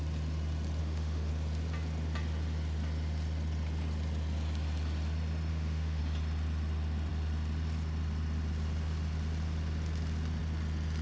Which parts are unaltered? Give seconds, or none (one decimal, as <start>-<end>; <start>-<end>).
0.0-0.8; 1.3-5.5; 6.0-11.0